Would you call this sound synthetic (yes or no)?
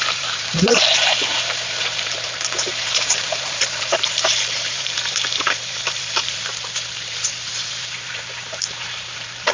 yes